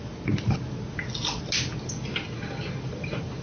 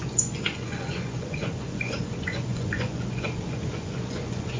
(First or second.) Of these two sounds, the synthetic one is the second